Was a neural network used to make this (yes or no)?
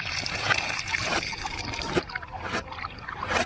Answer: yes